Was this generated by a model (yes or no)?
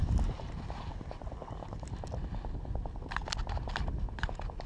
no